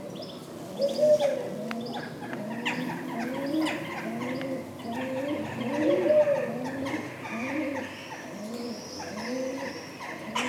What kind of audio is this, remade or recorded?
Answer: recorded